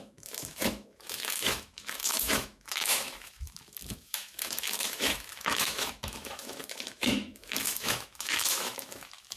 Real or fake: fake